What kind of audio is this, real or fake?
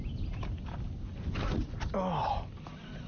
real